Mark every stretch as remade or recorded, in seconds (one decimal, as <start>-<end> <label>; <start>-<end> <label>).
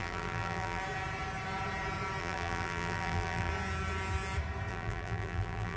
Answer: 0.0-0.8 remade; 0.8-2.2 recorded; 2.2-3.5 remade; 3.5-4.7 recorded; 4.7-5.8 remade